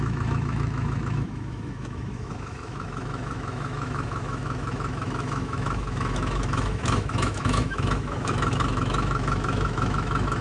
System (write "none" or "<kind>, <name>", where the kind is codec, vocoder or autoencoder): autoencoder, DAC-VAE